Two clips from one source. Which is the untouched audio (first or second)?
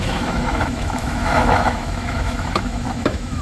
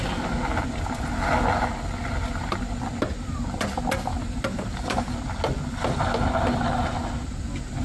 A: second